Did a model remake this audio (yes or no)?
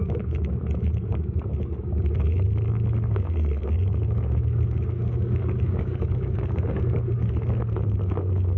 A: yes